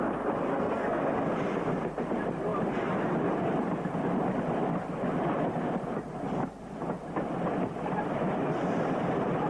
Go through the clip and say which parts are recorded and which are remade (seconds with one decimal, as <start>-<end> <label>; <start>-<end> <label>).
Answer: 0.0-0.5 recorded; 0.5-1.0 remade; 1.0-9.5 recorded